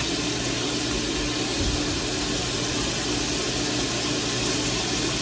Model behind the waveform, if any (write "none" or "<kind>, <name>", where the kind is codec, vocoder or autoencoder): none